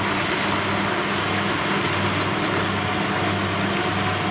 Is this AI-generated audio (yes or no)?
no